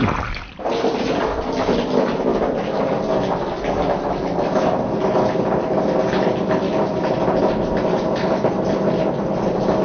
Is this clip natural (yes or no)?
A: yes